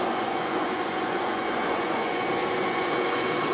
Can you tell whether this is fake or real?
fake